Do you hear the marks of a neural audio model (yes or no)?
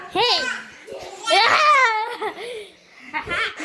no